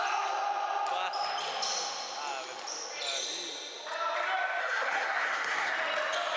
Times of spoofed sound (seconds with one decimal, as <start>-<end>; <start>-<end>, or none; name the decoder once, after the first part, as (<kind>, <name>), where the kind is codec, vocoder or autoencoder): 4.6-5.7 (codec, SNAC)